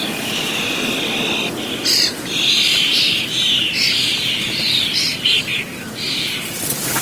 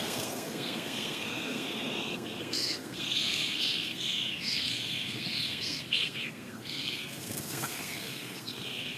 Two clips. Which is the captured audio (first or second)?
first